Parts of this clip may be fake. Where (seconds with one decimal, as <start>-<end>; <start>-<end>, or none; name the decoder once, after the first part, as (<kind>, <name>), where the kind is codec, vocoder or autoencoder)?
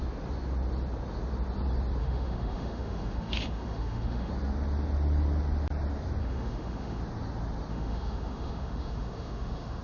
2.0-4.3 (autoencoder, DAC-VAE); 6.2-7.0; 7.7-9.8